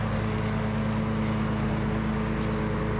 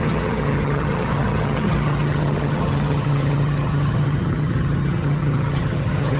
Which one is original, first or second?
first